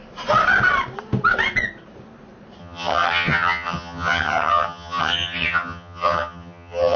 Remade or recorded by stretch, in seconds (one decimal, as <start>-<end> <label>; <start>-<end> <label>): 0.0-2.6 recorded; 2.6-7.0 remade